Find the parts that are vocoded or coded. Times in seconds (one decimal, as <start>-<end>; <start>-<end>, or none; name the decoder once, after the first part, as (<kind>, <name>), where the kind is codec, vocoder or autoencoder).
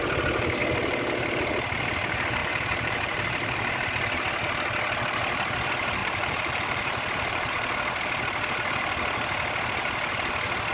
2.4-3.9 (vocoder, BigVGAN v2); 6.0-7.5